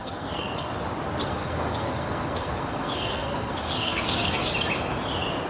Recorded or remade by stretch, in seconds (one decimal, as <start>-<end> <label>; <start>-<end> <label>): 0.0-0.7 remade; 0.7-1.2 recorded; 1.2-4.5 remade; 4.5-5.5 recorded